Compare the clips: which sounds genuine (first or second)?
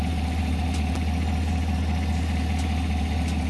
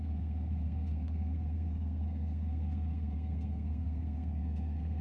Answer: first